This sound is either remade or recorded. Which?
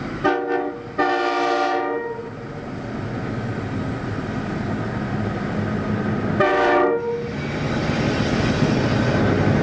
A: recorded